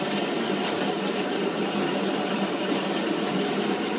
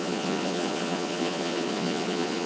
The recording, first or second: first